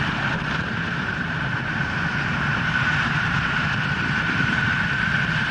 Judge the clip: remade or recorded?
remade